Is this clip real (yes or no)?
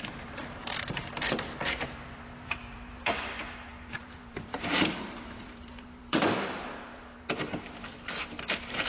no